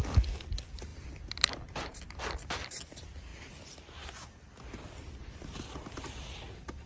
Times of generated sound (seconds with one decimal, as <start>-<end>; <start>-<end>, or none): none